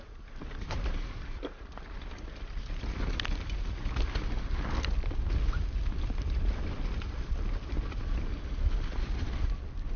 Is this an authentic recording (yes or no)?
yes